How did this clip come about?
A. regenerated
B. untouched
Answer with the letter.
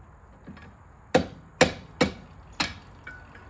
B